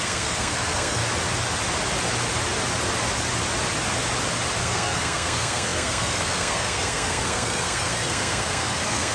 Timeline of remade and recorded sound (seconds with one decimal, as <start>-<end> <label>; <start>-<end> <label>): 0.0-1.0 remade; 1.0-4.6 recorded; 4.6-9.1 remade